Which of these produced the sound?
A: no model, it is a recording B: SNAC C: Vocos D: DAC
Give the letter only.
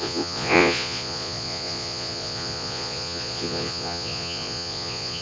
C